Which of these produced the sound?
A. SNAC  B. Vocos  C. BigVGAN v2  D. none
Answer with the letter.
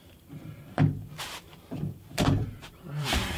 C